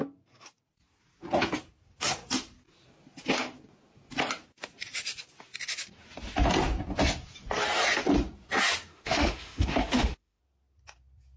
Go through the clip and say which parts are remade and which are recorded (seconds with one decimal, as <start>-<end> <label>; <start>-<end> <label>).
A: 0.0-8.9 recorded; 8.9-10.4 remade; 10.4-11.4 recorded

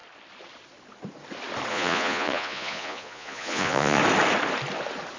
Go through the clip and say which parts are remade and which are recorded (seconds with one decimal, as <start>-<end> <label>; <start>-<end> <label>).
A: 0.0-1.7 recorded; 1.7-4.0 remade; 4.0-5.2 recorded

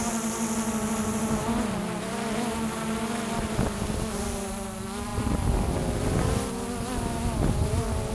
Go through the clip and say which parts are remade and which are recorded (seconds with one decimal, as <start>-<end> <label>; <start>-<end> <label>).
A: 0.0-8.1 recorded

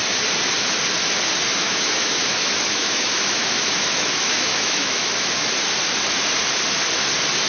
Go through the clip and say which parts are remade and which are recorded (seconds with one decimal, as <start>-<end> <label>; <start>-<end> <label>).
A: 0.0-1.5 recorded; 1.5-5.5 remade; 5.5-7.5 recorded

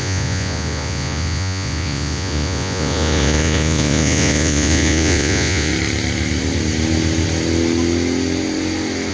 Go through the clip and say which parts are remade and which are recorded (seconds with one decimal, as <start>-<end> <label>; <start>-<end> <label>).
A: 0.0-5.7 remade; 5.7-9.1 recorded

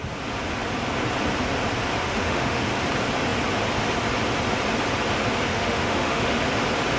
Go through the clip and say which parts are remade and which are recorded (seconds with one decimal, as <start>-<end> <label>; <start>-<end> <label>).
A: 0.0-2.0 recorded; 2.0-2.6 remade; 2.6-5.5 recorded; 5.5-6.4 remade; 6.4-7.0 recorded